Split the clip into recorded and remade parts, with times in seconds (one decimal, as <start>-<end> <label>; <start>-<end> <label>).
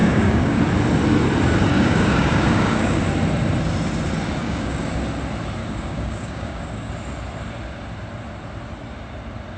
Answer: 0.0-0.6 remade; 0.6-1.7 recorded; 1.7-3.0 remade; 3.0-4.4 recorded; 4.4-5.0 remade; 5.0-5.6 recorded; 5.6-6.9 remade; 6.9-9.6 recorded